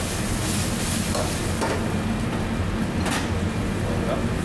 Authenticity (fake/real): real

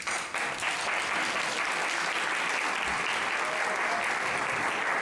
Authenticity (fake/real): real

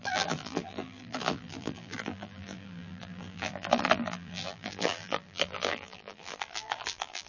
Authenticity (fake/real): fake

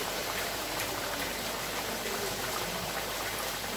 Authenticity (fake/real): fake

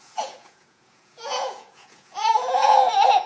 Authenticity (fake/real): fake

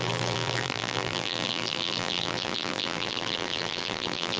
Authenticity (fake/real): fake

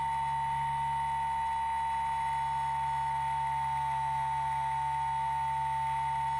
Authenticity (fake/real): real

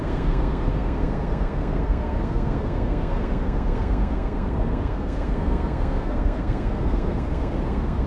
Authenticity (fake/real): fake